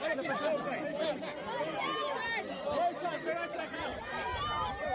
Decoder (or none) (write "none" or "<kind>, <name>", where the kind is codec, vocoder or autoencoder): none